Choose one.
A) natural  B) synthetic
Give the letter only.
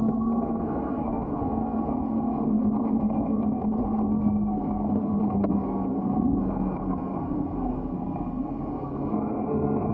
B